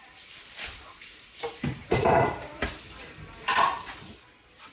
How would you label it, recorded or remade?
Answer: remade